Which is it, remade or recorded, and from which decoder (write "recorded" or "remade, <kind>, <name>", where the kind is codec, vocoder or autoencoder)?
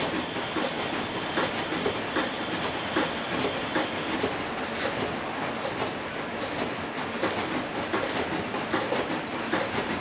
recorded